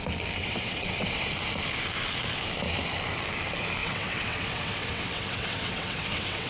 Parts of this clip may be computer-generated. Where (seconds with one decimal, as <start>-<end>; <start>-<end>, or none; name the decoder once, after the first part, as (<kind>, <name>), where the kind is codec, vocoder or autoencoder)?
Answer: 0.4-1.3 (vocoder, WaveNeXt); 3.8-6.5